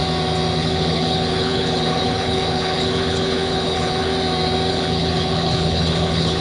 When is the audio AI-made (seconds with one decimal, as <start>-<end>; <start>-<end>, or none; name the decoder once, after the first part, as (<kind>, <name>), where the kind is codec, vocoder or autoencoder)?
0.6-4.1 (codec, HILCodec); 4.7-6.4

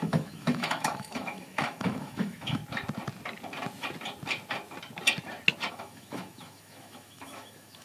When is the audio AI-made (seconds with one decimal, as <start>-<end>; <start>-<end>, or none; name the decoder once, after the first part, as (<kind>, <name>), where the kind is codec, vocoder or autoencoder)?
0.0-2.6 (autoencoder, DAC-VAE); 5.7-7.8

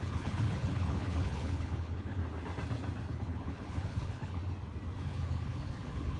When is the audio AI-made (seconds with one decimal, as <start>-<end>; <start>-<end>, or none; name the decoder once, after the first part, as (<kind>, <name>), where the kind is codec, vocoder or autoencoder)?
0.0-2.2 (codec, HILCodec); 3.1-4.4; 5.0-6.2

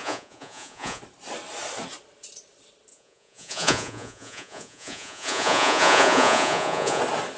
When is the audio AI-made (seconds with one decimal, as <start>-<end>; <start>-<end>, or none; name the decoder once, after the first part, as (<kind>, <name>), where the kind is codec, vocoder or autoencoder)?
0.0-1.0 (vocoder, Vocos); 2.9-7.0

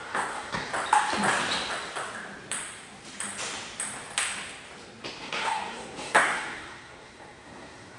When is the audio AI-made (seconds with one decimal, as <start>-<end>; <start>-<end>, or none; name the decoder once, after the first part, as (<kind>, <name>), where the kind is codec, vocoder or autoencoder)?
0.0-0.7 (codec, SNAC); 5.2-8.0

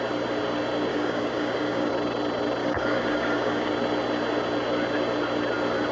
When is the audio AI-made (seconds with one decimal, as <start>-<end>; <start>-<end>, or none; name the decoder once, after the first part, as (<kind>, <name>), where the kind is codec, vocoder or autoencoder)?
0.9-1.9 (codec, DAC); 2.6-3.7

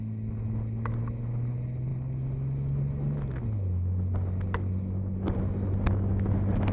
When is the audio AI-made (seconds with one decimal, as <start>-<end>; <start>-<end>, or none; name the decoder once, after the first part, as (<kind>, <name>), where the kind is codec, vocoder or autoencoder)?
none